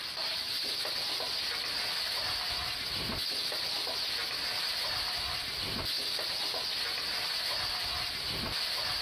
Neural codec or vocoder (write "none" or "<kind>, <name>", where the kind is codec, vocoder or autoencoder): none